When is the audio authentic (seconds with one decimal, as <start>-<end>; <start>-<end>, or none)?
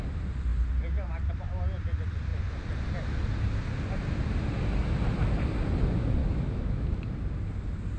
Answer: 0.0-6.2; 6.9-8.0